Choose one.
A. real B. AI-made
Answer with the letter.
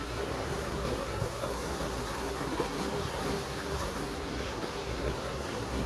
B